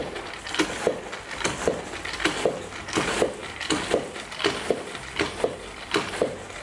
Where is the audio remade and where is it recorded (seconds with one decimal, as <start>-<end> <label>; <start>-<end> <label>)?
0.0-6.6 recorded